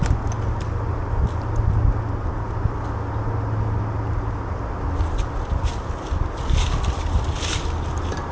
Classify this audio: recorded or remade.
recorded